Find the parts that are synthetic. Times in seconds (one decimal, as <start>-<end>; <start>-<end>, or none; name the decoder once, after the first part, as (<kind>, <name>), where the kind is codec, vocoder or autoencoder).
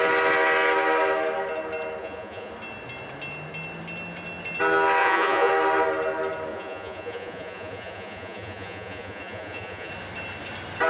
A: 2.0-2.5 (vocoder, Vocos); 5.0-5.5; 6.5-9.9